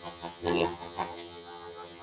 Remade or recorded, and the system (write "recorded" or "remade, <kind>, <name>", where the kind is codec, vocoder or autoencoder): remade, vocoder, HiFi-GAN